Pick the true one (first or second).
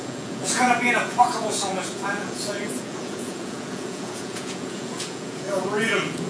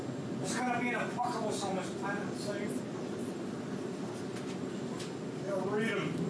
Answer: second